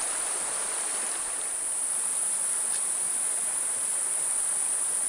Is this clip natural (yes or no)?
yes